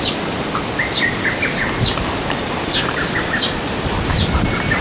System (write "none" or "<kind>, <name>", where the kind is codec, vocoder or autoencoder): none